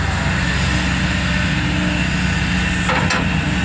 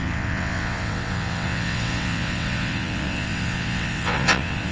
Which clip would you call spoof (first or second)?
second